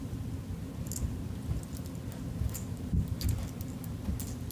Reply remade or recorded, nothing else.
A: recorded